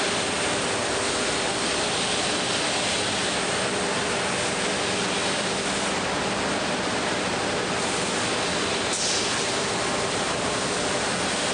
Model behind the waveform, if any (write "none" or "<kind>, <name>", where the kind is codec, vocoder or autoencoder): none